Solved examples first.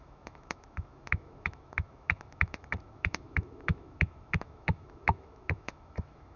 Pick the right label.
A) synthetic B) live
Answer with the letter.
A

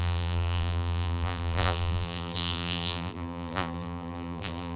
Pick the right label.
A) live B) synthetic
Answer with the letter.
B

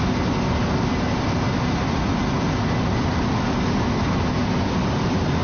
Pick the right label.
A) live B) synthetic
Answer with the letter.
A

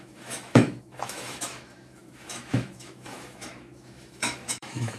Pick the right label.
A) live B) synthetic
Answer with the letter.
B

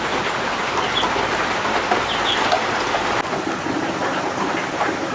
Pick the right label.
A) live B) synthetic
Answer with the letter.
A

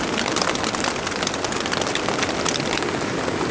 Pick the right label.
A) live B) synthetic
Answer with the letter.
A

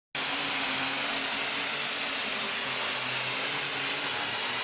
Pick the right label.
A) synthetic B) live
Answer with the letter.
B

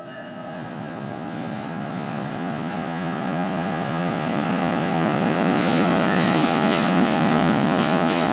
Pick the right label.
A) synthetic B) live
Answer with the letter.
A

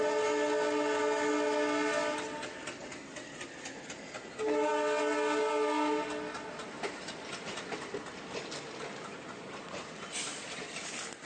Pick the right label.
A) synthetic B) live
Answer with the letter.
B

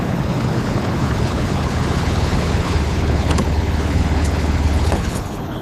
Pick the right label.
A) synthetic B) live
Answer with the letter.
A